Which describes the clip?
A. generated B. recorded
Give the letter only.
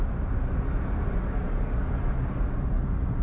A